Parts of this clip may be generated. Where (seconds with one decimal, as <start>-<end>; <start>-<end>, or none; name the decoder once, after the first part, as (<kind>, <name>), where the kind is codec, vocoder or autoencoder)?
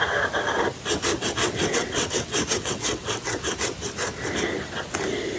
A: 1.4-3.4 (vocoder, WaveNeXt)